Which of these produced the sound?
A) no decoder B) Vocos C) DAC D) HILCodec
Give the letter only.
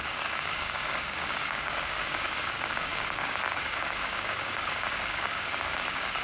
C